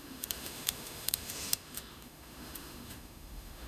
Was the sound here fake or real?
fake